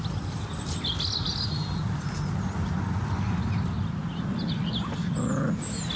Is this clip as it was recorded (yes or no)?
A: yes